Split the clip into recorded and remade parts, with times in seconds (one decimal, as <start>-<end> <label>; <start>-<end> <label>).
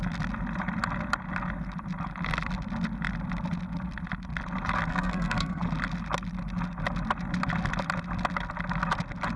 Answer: 0.0-4.9 recorded; 4.9-5.6 remade; 5.6-9.4 recorded